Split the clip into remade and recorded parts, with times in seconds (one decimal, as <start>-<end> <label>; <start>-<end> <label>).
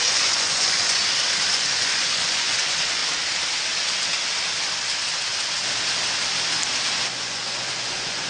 0.0-1.0 remade; 1.0-1.5 recorded; 1.5-3.0 remade; 3.0-7.0 recorded; 7.0-8.3 remade